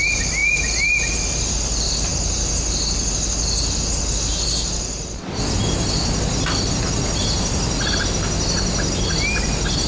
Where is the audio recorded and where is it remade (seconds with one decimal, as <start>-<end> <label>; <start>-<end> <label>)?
0.0-9.9 recorded